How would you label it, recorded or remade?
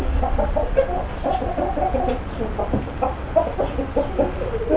recorded